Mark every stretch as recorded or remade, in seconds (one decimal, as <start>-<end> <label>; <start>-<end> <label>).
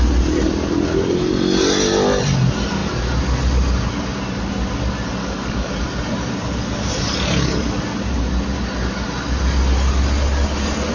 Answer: 0.0-5.2 recorded; 5.2-5.7 remade; 5.7-10.9 recorded